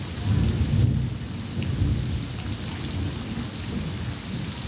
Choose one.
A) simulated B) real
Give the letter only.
B